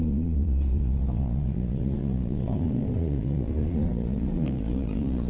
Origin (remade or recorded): remade